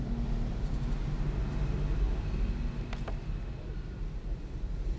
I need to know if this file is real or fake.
real